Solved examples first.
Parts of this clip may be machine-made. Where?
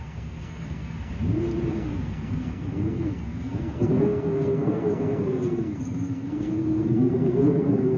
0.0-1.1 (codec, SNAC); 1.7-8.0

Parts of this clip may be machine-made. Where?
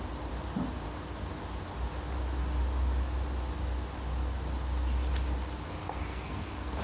5.8-6.8 (codec, SNAC)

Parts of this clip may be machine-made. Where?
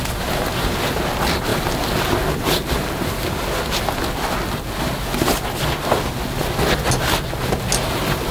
none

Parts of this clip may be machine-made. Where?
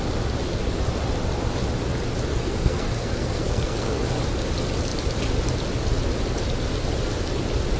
2.3-4.0 (codec, SNAC)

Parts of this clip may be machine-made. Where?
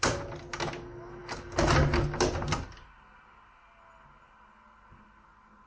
none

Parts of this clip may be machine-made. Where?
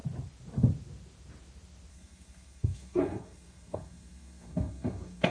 1.9-5.3 (codec, SNAC)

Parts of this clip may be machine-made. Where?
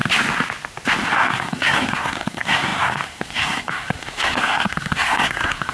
1.1-5.7 (codec, SNAC)